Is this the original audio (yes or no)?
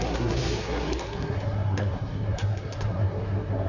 no